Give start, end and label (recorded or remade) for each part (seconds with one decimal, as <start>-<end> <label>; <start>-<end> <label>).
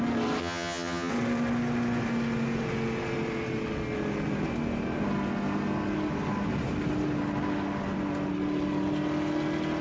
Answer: 0.0-0.4 recorded; 0.4-1.1 remade; 1.1-9.8 recorded